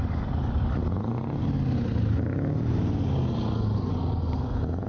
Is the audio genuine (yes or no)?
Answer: yes